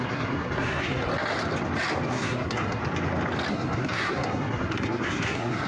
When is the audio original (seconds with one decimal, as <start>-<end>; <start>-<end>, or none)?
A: 1.1-2.1; 2.8-3.5